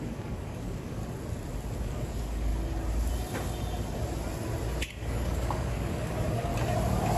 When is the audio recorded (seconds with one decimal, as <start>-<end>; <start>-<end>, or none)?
1.0-1.8; 2.5-4.9; 6.5-7.2